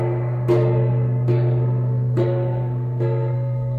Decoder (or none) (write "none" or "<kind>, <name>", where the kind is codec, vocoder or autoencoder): codec, SNAC